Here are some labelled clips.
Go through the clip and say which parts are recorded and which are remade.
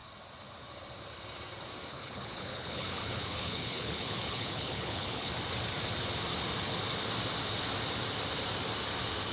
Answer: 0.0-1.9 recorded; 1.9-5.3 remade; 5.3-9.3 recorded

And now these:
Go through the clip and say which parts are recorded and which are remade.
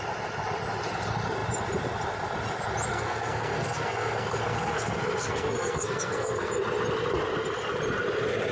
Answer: 0.0-2.9 recorded; 2.9-6.5 remade; 6.5-8.5 recorded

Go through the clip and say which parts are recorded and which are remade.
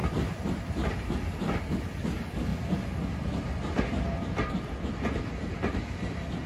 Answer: 0.0-0.6 remade; 0.6-6.5 recorded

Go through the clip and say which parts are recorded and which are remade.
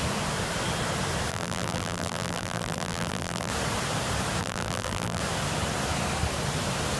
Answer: 0.0-1.3 recorded; 1.3-3.5 remade; 3.5-4.4 recorded; 4.4-5.2 remade; 5.2-7.0 recorded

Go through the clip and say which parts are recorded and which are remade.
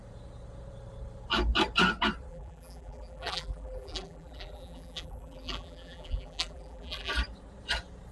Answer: 0.0-2.3 recorded; 2.3-7.1 remade; 7.1-8.1 recorded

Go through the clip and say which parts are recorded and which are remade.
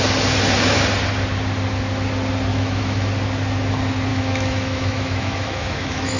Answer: 0.0-2.5 recorded; 2.5-3.1 remade; 3.1-4.1 recorded; 4.1-6.2 remade